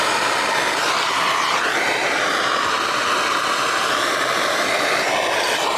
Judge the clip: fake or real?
real